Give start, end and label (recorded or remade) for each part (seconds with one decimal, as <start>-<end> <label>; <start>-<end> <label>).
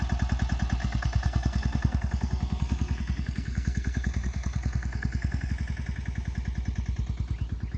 0.0-0.8 recorded; 0.8-5.5 remade; 5.5-7.8 recorded